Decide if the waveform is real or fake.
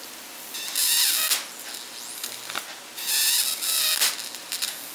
real